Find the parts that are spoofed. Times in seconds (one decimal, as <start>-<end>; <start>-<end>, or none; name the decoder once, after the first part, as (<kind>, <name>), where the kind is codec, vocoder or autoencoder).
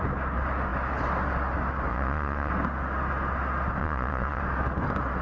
1.9-2.5 (vocoder, Vocos); 3.8-4.4